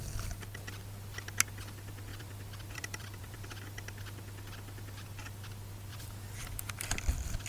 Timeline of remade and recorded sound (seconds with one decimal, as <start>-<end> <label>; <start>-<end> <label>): 0.0-2.1 recorded; 2.1-3.5 remade; 3.5-5.9 recorded; 5.9-6.7 remade; 6.7-7.5 recorded